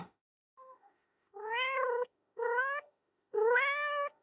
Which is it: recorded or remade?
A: remade